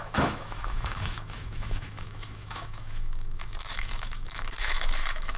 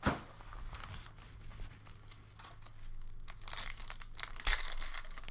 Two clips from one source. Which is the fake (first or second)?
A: first